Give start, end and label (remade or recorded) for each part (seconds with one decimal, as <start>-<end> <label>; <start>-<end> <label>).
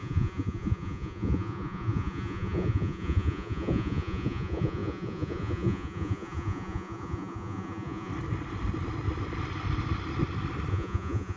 0.0-8.1 remade; 8.1-10.7 recorded; 10.7-11.4 remade